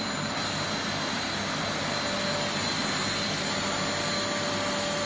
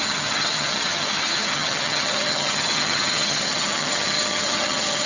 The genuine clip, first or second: first